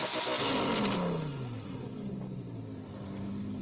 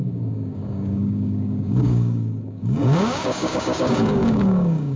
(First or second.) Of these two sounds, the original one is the first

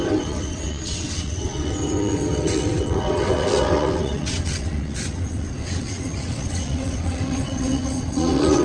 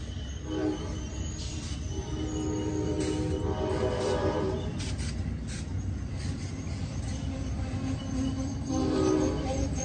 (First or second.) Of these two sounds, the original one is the second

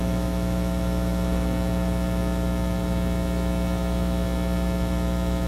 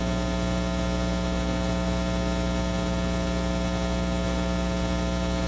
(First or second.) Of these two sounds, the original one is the second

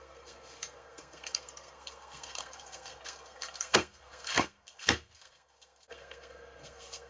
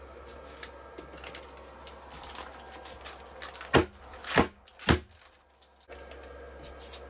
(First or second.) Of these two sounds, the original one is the second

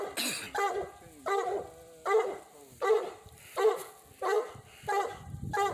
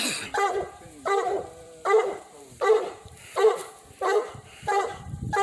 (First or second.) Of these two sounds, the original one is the first